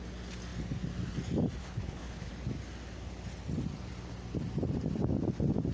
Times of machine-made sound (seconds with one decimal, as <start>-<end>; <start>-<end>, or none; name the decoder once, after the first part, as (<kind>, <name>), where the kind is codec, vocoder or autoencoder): 1.6-2.3 (codec, HILCodec)